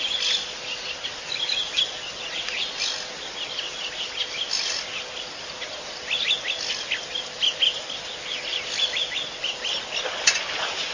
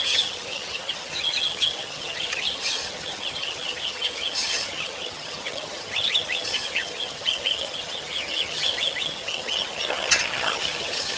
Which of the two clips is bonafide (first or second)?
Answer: first